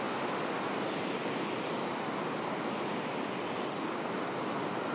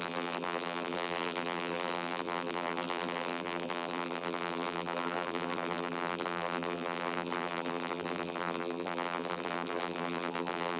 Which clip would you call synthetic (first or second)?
second